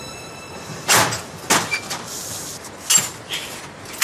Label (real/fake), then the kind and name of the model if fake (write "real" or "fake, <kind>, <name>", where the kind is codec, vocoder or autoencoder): real